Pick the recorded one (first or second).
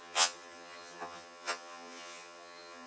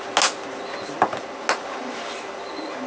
second